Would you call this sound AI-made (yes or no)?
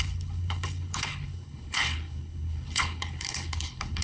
yes